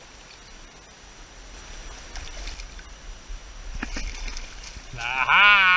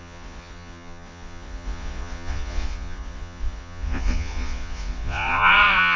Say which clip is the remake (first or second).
second